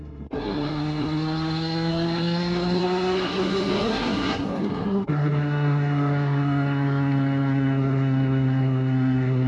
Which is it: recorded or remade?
remade